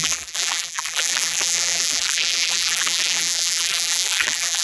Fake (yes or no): yes